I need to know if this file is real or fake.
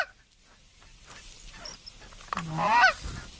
real